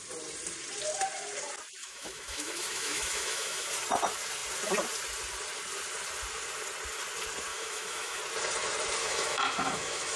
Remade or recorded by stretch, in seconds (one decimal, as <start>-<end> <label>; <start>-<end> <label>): 0.0-1.8 recorded; 1.8-3.7 remade; 3.7-7.5 recorded; 7.5-8.2 remade; 8.2-9.0 recorded; 9.0-10.2 remade